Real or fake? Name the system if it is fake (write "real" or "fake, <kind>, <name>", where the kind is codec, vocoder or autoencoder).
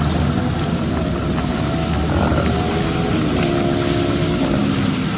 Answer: real